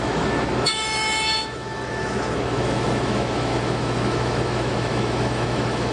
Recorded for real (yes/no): no